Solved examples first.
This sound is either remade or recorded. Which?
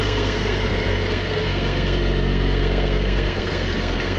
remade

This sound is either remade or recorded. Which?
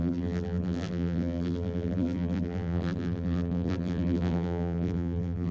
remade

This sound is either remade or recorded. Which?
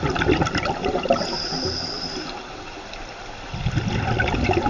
recorded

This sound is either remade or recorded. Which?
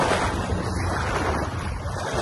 recorded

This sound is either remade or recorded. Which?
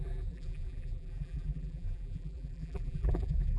remade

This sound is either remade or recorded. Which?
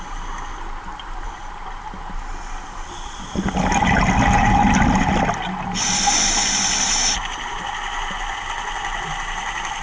recorded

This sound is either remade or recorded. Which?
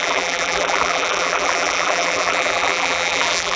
remade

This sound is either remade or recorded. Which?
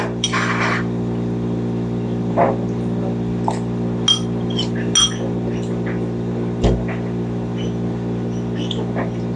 recorded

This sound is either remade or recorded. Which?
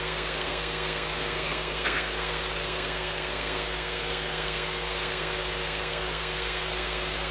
remade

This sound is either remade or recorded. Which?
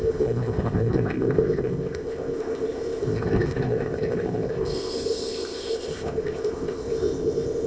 remade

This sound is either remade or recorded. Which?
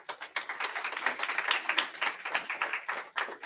recorded